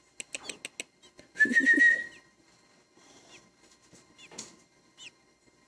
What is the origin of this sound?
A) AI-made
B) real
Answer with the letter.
B